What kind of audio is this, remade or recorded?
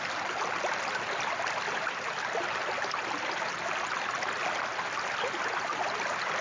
recorded